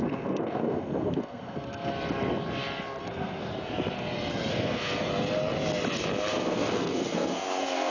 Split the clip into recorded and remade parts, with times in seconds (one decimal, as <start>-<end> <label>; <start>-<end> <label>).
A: 0.0-1.9 remade; 1.9-3.0 recorded; 3.0-3.5 remade; 3.5-4.5 recorded; 4.5-5.1 remade; 5.1-6.3 recorded; 6.3-7.9 remade